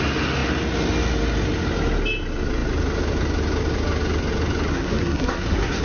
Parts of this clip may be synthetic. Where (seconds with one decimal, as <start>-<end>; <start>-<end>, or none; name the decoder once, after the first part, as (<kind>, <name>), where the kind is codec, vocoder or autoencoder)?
4.7-5.8 (codec, SNAC)